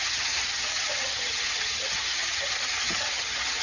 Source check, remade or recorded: remade